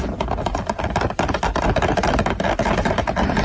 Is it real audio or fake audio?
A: real